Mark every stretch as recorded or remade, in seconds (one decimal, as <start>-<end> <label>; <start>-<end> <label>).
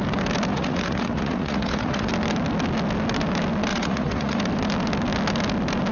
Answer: 0.0-0.5 recorded; 0.5-2.1 remade; 2.1-3.7 recorded; 3.7-4.4 remade; 4.4-5.9 recorded